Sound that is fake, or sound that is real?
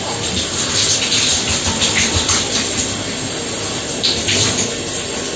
real